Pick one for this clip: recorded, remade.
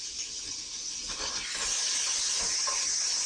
recorded